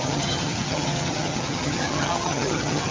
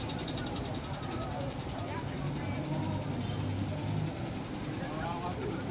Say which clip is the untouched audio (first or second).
second